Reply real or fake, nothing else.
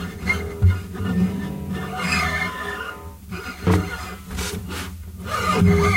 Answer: real